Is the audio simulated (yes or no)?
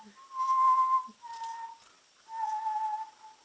no